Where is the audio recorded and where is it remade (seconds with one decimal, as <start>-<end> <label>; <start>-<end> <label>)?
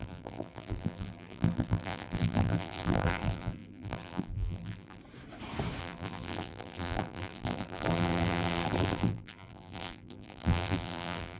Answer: 0.0-5.0 remade; 5.0-5.8 recorded; 5.8-11.4 remade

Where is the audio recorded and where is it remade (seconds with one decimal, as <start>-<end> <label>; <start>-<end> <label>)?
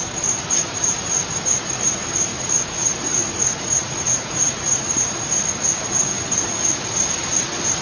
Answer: 0.0-2.3 recorded; 2.3-5.0 remade; 5.0-7.8 recorded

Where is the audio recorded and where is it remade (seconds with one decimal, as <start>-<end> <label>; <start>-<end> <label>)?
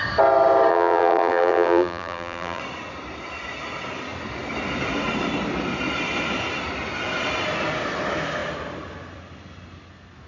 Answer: 0.0-0.7 recorded; 0.7-2.6 remade; 2.6-10.3 recorded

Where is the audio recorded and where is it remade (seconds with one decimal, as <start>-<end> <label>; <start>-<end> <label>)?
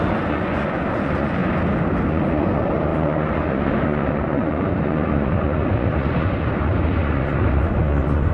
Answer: 0.0-1.4 remade; 1.4-2.1 recorded; 2.1-8.3 remade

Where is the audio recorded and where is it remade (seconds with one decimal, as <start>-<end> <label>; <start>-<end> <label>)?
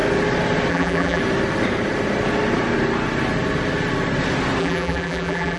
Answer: 0.0-0.7 recorded; 0.7-1.2 remade; 1.2-4.6 recorded; 4.6-5.6 remade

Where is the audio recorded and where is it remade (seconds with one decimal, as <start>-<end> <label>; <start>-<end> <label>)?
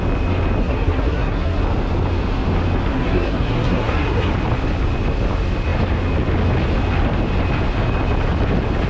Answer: 0.0-0.6 recorded; 0.6-1.6 remade; 1.6-2.9 recorded; 2.9-4.3 remade; 4.3-8.9 recorded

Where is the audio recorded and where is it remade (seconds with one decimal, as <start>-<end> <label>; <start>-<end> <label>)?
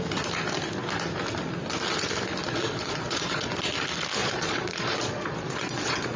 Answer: 0.0-2.4 recorded; 2.4-3.5 remade; 3.5-4.2 recorded; 4.2-6.2 remade